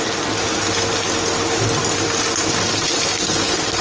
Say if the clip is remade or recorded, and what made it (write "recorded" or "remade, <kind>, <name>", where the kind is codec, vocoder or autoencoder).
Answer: recorded